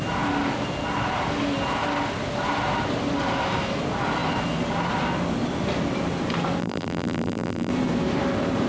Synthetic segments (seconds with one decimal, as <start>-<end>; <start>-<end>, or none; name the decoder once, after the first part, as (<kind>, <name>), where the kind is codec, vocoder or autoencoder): 6.6-7.7 (vocoder, BigVGAN v2)